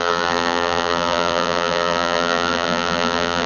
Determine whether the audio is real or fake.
fake